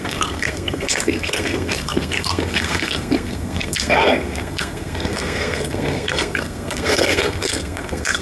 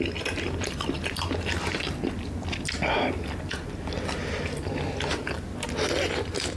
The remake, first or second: first